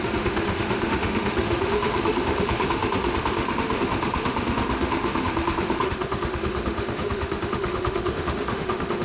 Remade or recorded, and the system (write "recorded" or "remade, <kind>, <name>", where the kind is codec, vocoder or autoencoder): remade, autoencoder, DAC-VAE